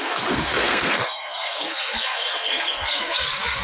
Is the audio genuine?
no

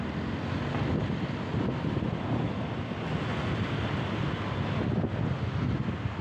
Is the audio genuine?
yes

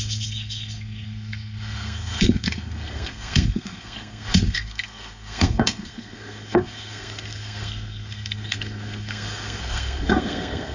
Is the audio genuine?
no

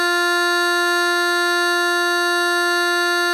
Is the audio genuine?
yes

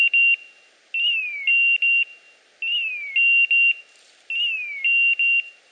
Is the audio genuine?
yes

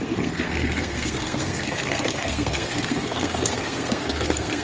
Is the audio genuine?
no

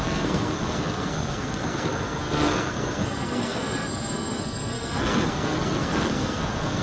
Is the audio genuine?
no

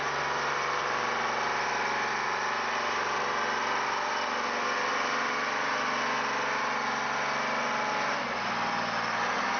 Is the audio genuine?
yes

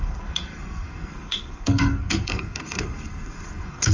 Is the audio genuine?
no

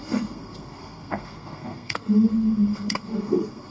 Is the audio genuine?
no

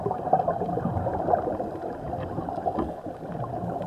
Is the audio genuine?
yes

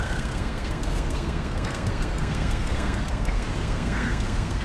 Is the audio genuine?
no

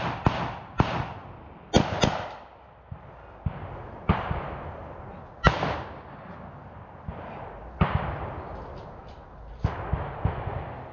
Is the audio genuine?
yes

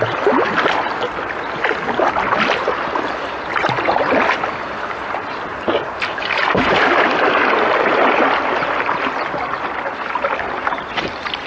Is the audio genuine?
yes